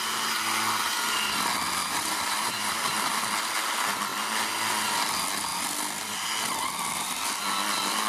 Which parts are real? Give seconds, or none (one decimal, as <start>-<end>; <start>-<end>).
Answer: 0.0-1.8; 3.2-8.1